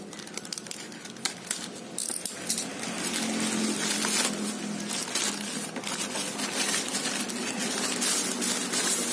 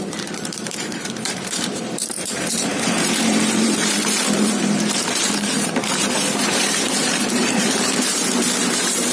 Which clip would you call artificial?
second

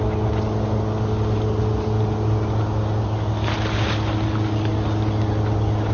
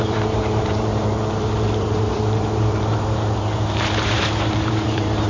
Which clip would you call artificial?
second